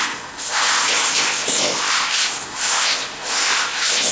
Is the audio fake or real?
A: fake